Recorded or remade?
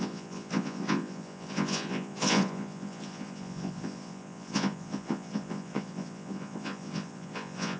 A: remade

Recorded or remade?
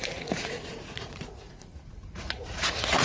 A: remade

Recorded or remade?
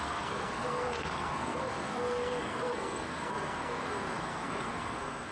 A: remade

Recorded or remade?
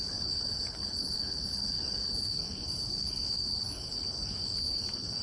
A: remade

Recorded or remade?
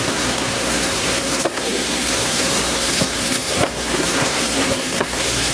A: remade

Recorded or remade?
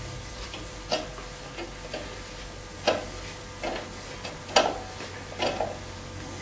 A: recorded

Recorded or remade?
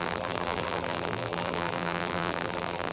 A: remade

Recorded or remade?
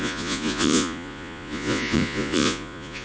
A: remade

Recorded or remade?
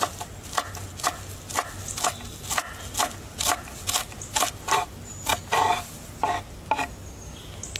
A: recorded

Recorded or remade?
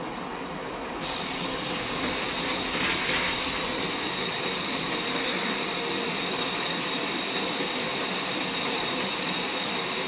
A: recorded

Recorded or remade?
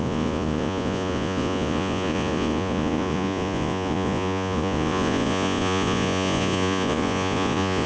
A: remade